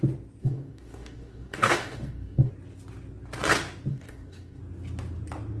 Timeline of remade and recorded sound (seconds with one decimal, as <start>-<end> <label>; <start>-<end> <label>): 0.0-0.4 recorded; 0.4-2.5 remade; 2.5-3.9 recorded; 3.9-4.6 remade; 4.6-5.6 recorded